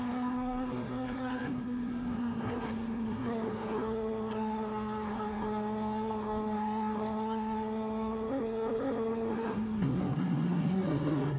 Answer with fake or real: fake